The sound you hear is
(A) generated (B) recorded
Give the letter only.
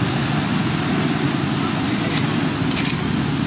B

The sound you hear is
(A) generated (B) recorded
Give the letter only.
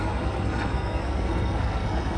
A